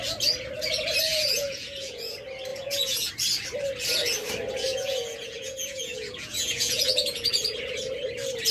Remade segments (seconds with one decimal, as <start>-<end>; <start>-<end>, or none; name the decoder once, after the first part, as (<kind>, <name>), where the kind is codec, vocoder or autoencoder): 1.1-2.1 (vocoder, Vocos); 2.5-3.1; 4.7-7.3